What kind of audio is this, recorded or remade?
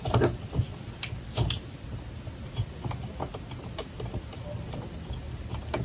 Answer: recorded